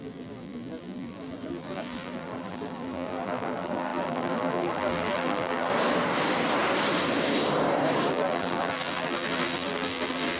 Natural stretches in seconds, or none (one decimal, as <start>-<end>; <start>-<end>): 5.7-8.1